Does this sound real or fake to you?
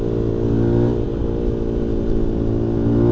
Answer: real